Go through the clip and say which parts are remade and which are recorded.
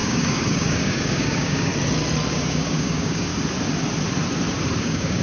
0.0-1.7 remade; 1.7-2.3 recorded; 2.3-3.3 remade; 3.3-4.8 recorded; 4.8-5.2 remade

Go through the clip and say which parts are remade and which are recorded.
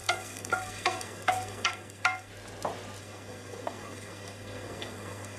0.0-2.3 remade; 2.3-3.0 recorded; 3.0-5.4 remade